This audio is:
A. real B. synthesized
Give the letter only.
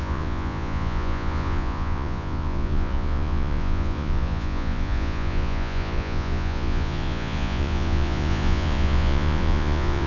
B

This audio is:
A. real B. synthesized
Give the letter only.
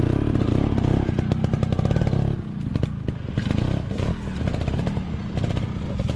A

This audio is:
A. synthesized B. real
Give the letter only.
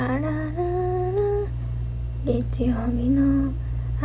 B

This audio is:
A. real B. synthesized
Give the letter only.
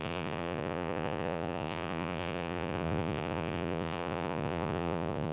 B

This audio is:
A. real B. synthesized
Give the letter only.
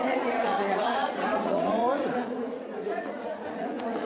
B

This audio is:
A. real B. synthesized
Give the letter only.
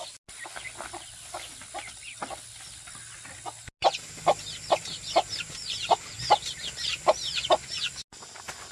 A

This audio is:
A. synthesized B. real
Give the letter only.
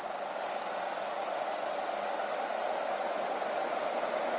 B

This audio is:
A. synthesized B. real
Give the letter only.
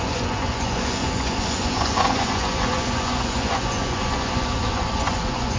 A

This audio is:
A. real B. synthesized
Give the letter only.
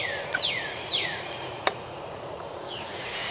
B